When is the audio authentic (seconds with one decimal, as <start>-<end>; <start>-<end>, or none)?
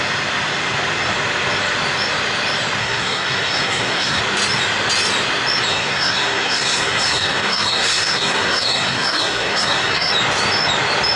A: 0.0-2.8; 4.2-5.7; 10.1-11.2